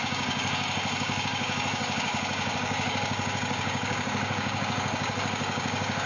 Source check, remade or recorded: remade